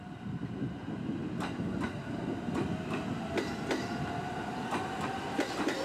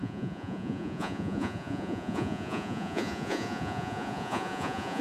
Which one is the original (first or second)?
first